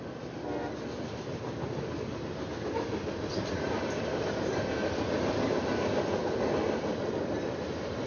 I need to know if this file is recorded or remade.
recorded